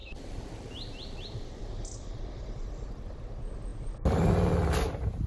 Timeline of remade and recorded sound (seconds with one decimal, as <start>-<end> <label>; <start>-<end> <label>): 0.0-1.6 remade; 1.6-5.3 recorded